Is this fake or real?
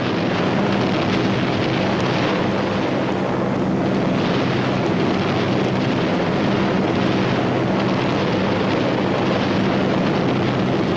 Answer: real